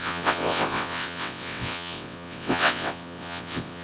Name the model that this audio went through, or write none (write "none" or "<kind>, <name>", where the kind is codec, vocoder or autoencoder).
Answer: vocoder, WaveNeXt